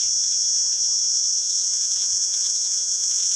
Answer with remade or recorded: remade